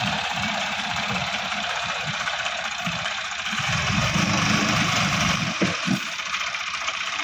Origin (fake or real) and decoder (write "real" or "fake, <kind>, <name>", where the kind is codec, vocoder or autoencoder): fake, vocoder, BigVGAN v2